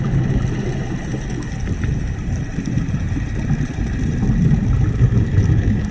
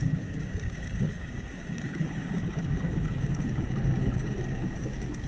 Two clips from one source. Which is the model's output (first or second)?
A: second